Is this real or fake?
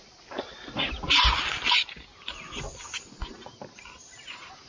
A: real